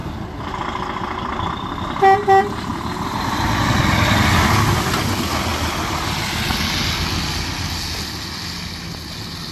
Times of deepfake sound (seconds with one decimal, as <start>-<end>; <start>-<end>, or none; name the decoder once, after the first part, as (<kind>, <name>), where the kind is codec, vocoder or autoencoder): 0.0-2.0 (vocoder, BigVGAN v2); 2.7-3.8